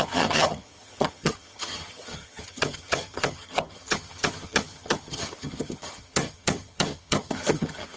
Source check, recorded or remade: remade